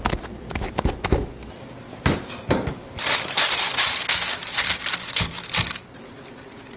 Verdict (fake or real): fake